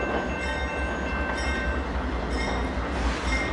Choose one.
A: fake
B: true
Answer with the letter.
B